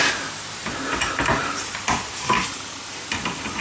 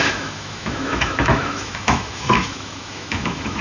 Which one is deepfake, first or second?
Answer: second